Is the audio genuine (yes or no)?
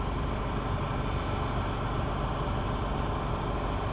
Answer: yes